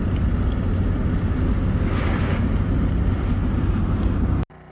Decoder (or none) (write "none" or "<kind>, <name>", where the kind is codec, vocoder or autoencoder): none